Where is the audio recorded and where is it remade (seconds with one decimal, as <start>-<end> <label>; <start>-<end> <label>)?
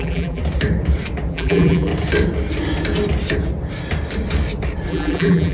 0.0-0.4 remade; 0.4-1.3 recorded; 1.3-1.9 remade; 1.9-4.9 recorded; 4.9-5.5 remade